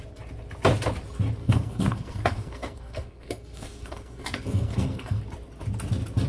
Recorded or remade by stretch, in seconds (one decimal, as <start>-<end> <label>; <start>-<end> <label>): 0.0-1.4 recorded; 1.4-5.2 remade; 5.2-6.3 recorded